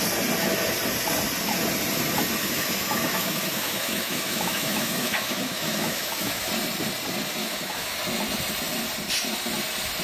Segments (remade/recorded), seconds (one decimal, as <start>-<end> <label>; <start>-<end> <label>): 0.0-2.4 recorded; 2.4-6.5 remade; 6.5-7.4 recorded; 7.4-8.0 remade; 8.0-10.0 recorded